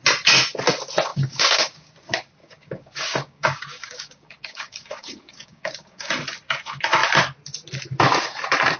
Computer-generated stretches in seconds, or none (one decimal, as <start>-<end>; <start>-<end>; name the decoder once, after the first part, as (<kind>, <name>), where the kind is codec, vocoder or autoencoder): 1.1-1.9 (codec, DAC); 2.4-6.1